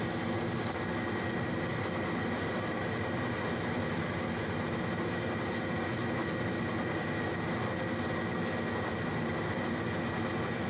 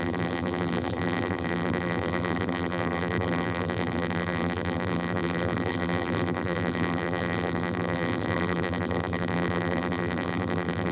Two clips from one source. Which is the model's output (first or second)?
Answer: second